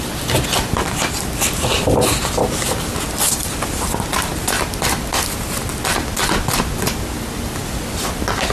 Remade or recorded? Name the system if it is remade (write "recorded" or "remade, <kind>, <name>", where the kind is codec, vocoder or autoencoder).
recorded